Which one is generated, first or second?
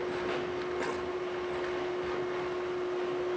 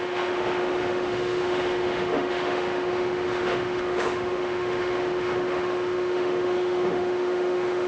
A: second